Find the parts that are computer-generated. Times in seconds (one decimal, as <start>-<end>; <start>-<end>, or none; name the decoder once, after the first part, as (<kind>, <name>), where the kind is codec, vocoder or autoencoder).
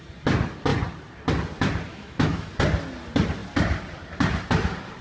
1.9-2.5 (autoencoder, DAC-VAE)